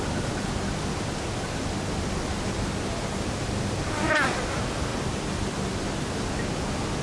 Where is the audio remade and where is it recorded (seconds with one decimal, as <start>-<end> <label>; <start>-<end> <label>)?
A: 0.0-4.9 recorded; 4.9-5.4 remade; 5.4-7.0 recorded